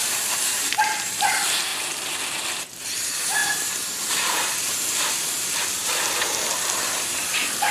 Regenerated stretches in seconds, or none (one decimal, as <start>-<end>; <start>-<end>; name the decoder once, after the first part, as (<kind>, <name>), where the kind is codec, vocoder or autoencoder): 0.0-1.7 (vocoder, BigVGAN v2); 2.6-7.7